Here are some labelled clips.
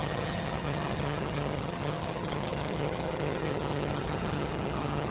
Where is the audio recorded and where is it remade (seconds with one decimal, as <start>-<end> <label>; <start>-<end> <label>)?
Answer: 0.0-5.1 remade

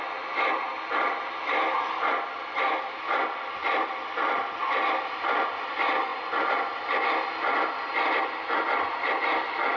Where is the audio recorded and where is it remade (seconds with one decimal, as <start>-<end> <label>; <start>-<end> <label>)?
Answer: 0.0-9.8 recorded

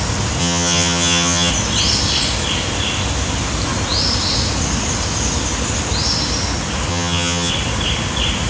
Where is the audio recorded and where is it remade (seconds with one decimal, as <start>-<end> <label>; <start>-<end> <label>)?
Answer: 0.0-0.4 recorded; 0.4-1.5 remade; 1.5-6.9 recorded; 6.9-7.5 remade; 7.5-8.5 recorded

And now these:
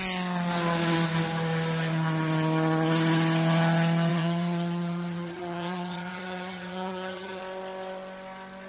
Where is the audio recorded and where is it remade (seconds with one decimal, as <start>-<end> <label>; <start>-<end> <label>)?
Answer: 0.0-4.1 recorded; 4.1-7.4 remade; 7.4-8.7 recorded

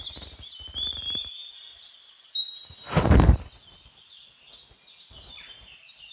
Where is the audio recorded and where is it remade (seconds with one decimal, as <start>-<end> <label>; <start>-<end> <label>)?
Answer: 0.0-6.1 recorded

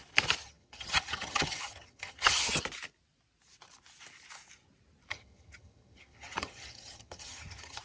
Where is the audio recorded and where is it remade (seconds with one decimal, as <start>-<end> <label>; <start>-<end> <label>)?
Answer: 0.0-0.4 recorded; 0.4-2.6 remade; 2.6-5.1 recorded; 5.1-7.8 remade